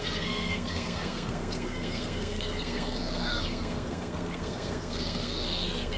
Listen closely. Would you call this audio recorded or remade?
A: remade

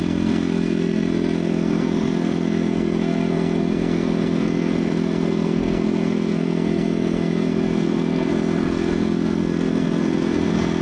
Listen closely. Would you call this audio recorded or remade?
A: remade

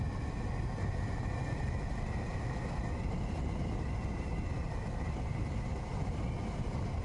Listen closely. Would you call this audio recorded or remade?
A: recorded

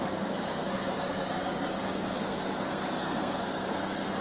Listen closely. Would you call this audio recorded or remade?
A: remade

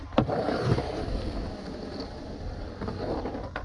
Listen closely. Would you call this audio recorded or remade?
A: recorded